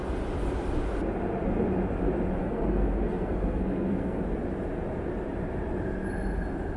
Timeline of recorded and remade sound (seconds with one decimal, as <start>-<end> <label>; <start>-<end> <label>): 0.0-2.4 recorded; 2.4-4.2 remade; 4.2-6.8 recorded